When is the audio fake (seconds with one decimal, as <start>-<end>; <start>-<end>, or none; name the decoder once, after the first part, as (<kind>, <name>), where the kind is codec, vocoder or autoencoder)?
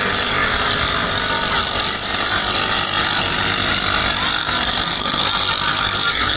4.4-5.2 (codec, SNAC); 5.7-6.4